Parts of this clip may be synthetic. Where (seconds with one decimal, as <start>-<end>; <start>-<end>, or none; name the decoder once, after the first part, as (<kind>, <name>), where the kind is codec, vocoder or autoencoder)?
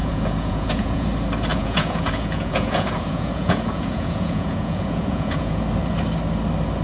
0.0-1.1 (vocoder, Vocos); 1.5-5.6